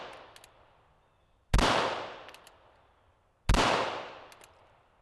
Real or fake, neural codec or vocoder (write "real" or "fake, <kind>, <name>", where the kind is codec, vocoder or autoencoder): real